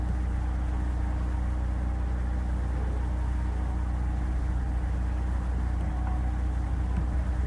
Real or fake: real